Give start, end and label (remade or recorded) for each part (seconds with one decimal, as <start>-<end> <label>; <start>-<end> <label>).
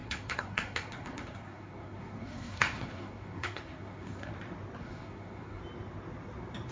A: 0.0-4.3 remade; 4.3-4.8 recorded; 4.8-5.6 remade; 5.6-6.7 recorded